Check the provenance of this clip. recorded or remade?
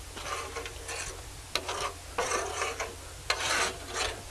recorded